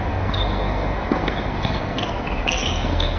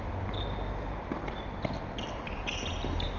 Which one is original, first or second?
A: second